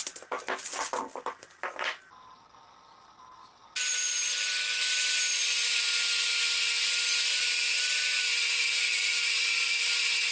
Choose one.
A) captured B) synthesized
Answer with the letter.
A